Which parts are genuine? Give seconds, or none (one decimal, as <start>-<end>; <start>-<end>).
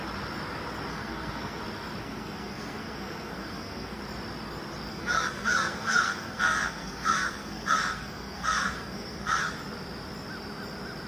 0.0-0.9; 1.6-2.0; 4.0-4.9; 9.4-11.1